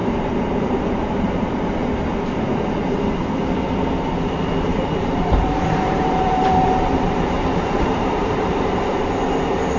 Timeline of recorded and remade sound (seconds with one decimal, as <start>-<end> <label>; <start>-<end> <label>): 0.0-0.8 remade; 0.8-4.7 recorded; 4.7-9.0 remade; 9.0-9.8 recorded

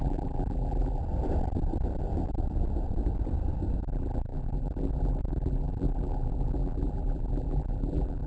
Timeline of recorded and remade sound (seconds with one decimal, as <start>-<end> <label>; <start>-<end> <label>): 0.0-1.0 remade; 1.0-3.8 recorded; 3.8-8.3 remade